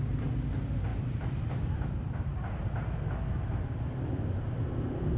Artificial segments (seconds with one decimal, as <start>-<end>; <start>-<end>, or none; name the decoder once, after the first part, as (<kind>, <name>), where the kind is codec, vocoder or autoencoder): none